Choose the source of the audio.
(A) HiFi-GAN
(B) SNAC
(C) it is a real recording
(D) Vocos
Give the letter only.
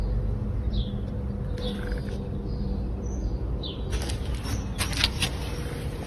C